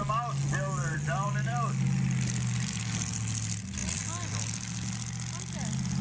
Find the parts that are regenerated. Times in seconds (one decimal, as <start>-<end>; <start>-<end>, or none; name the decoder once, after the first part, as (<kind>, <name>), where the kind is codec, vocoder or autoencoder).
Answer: 0.8-2.8 (vocoder, BigVGAN v2)